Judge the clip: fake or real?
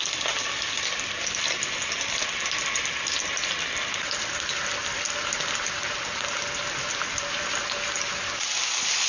real